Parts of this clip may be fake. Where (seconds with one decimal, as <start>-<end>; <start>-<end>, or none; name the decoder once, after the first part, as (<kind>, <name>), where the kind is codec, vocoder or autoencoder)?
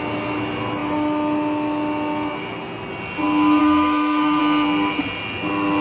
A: 3.6-4.4 (codec, SNAC)